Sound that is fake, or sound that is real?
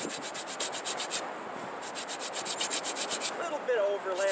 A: real